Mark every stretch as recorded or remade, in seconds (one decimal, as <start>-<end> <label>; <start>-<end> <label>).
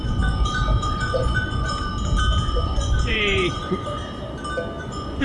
0.0-1.9 remade; 1.9-2.5 recorded; 2.5-4.0 remade; 4.0-4.8 recorded; 4.8-5.2 remade